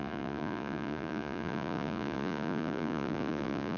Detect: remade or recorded remade